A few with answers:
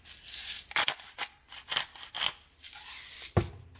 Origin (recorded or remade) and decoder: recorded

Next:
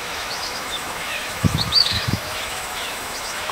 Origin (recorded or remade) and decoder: remade, autoencoder, DAC-VAE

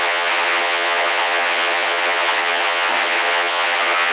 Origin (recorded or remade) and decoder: remade, vocoder, HiFi-GAN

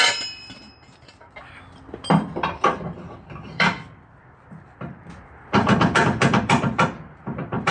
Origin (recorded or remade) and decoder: remade, vocoder, BigVGAN v2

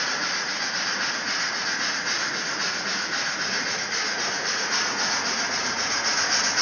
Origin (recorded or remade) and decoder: remade, vocoder, Vocos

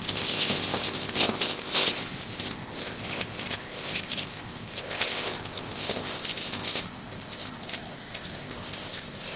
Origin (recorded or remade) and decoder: remade, codec, ZipCodec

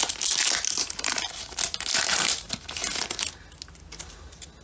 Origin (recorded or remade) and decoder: recorded